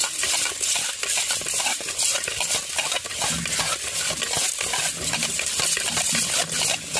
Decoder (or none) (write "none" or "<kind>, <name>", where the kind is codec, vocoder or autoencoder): none